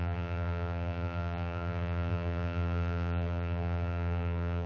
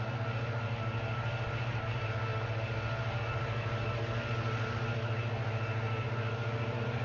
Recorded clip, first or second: second